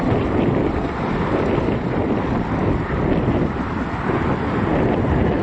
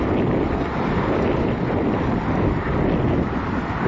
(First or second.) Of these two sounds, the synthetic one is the first